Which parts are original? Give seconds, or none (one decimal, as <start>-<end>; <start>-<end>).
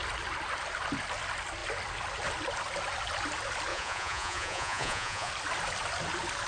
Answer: 0.0-3.7; 5.3-6.5